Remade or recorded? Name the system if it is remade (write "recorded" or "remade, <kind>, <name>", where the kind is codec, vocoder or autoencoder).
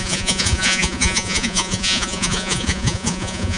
remade, vocoder, Vocos